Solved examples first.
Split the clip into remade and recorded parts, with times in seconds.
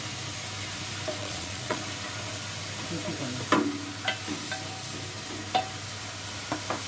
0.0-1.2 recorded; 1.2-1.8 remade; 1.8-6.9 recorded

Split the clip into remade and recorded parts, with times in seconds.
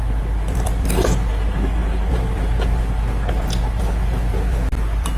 0.0-5.2 recorded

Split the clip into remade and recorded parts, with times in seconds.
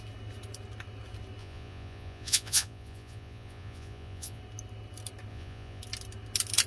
0.0-1.4 recorded; 1.4-4.4 remade; 4.4-5.3 recorded; 5.3-5.8 remade; 5.8-6.7 recorded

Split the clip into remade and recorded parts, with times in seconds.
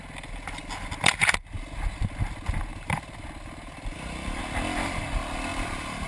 0.0-2.7 recorded; 2.7-4.4 remade; 4.4-5.5 recorded; 5.5-6.1 remade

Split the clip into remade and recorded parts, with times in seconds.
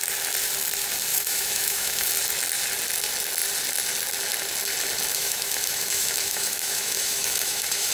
0.0-1.1 recorded; 1.1-2.1 remade; 2.1-5.1 recorded; 5.1-7.9 remade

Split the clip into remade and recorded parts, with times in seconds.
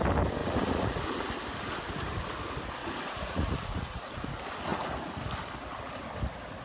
0.0-0.4 recorded; 0.4-1.2 remade; 1.2-2.8 recorded; 2.8-4.3 remade; 4.3-4.7 recorded; 4.7-5.2 remade; 5.2-6.6 recorded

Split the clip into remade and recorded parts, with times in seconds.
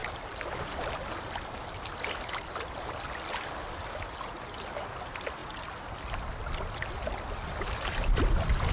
0.0-8.7 recorded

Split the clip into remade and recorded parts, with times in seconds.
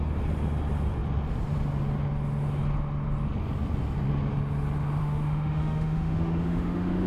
0.0-5.0 recorded; 5.0-7.1 remade